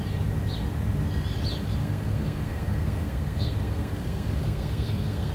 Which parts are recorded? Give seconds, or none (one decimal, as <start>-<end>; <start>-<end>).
0.0-1.8